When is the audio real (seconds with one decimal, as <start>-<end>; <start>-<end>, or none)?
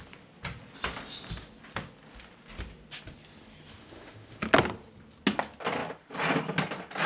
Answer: 0.0-3.8; 4.4-7.1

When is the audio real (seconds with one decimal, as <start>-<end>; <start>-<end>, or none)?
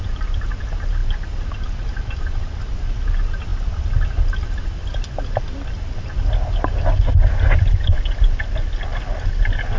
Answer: 0.0-9.8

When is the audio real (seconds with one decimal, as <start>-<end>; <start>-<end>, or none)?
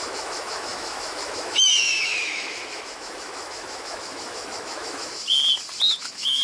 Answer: 5.2-5.9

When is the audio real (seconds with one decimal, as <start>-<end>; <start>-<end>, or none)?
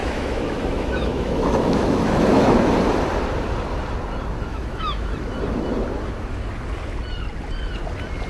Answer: 2.7-4.5; 5.1-8.3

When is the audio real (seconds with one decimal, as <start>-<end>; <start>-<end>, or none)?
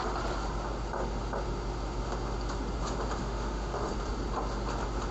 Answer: 0.0-3.2; 3.9-5.1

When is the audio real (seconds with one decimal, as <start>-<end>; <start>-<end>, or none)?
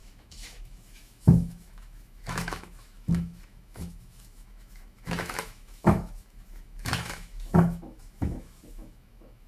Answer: none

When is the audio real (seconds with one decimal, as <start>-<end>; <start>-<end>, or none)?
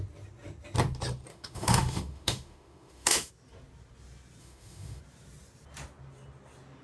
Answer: 0.0-1.3; 3.3-4.4; 5.0-6.8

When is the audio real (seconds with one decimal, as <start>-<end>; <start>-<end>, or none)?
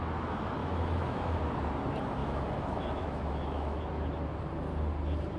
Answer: 0.0-0.6; 1.4-2.2; 3.8-5.4